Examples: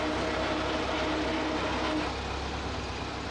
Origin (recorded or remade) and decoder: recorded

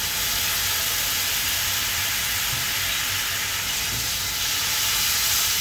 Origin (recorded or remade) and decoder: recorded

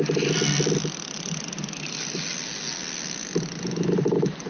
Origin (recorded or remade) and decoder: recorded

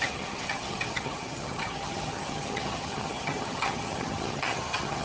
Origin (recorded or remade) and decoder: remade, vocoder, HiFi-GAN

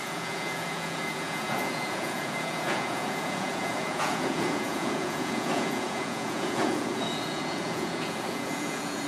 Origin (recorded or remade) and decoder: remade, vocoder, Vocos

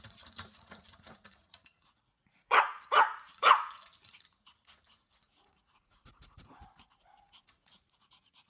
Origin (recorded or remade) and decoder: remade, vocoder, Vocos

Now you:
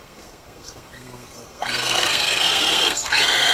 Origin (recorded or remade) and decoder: remade, codec, SNAC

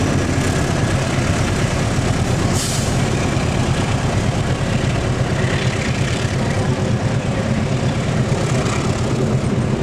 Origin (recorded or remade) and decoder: remade, vocoder, BigVGAN v2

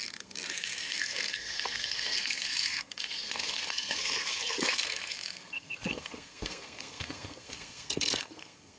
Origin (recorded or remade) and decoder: remade, codec, SNAC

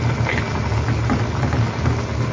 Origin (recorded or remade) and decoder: recorded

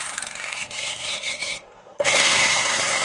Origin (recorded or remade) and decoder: remade, codec, SNAC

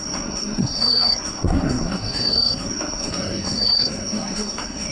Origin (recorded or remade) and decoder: remade, codec, SNAC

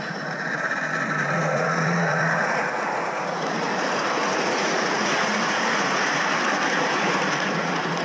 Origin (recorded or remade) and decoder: remade, vocoder, Vocos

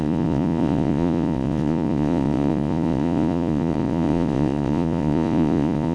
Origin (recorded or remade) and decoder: remade, vocoder, Vocos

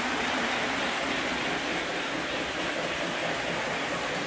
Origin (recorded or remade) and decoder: recorded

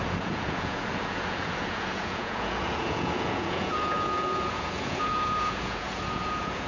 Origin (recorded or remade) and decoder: remade, vocoder, Vocos